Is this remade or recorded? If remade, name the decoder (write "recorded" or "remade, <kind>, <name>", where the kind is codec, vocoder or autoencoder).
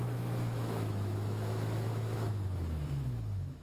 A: remade, autoencoder, DAC-VAE